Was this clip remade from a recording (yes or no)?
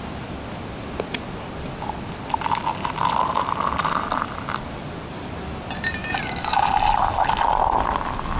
no